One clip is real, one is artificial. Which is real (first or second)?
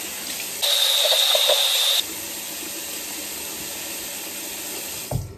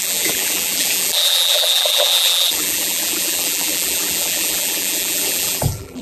first